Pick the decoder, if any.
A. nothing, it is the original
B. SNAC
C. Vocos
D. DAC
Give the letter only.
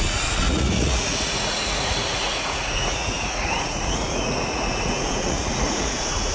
C